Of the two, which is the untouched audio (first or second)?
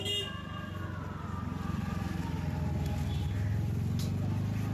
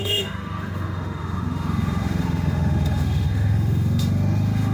first